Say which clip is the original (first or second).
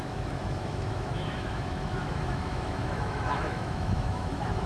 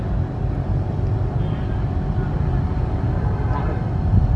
second